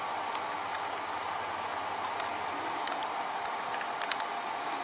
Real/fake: real